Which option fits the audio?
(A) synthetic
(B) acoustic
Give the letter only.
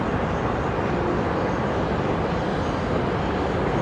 B